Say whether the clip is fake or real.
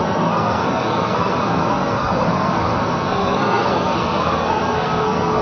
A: fake